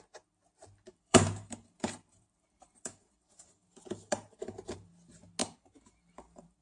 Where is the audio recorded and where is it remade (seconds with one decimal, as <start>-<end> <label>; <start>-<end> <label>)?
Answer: 0.0-0.9 recorded; 0.9-4.9 remade; 4.9-5.4 recorded; 5.4-6.6 remade